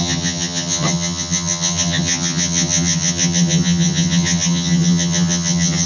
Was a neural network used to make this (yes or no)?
yes